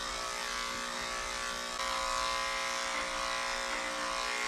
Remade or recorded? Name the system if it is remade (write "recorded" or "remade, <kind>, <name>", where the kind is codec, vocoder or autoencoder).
recorded